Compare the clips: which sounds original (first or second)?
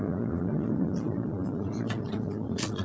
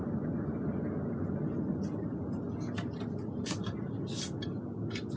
second